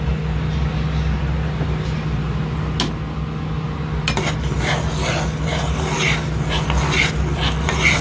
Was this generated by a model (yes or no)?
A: no